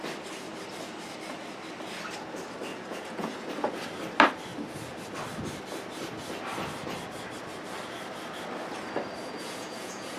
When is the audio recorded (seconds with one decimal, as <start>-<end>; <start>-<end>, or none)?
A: 0.0-2.7; 3.5-9.2